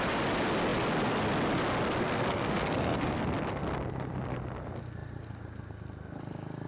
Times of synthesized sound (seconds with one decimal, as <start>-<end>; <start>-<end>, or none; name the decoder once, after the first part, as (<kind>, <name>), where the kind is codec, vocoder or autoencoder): 2.0-3.2 (codec, SNAC)